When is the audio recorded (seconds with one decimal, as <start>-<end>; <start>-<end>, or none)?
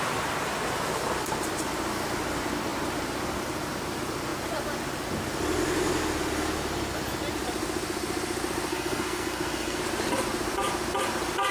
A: 0.0-8.7; 9.8-11.5